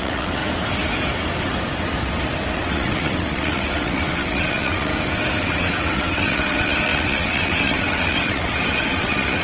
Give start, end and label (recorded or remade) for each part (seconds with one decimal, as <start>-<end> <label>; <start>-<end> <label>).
0.0-0.4 remade; 0.4-2.5 recorded; 2.5-4.9 remade; 4.9-5.4 recorded; 5.4-9.4 remade